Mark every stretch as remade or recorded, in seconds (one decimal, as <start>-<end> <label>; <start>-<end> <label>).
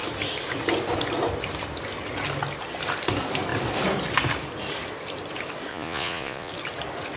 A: 0.0-5.7 recorded; 5.7-6.5 remade; 6.5-7.2 recorded